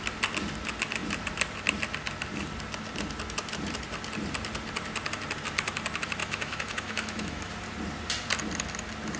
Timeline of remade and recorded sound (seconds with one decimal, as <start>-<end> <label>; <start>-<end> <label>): 0.0-6.2 recorded; 6.2-7.5 remade; 7.5-9.2 recorded